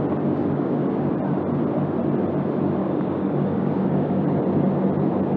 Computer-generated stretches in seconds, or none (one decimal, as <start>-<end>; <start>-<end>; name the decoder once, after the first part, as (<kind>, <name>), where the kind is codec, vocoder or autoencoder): 0.4-1.1 (codec, DAC); 2.8-4.4